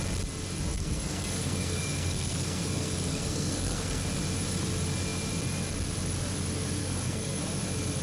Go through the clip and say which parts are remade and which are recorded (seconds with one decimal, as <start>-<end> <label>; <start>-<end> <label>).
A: 0.0-0.7 recorded; 0.7-4.1 remade; 4.1-6.8 recorded; 6.8-7.4 remade; 7.4-8.0 recorded